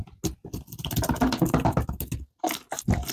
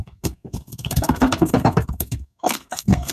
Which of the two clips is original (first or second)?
first